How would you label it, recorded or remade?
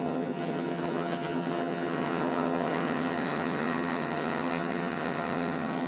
remade